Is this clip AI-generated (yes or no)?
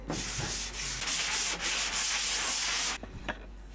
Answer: no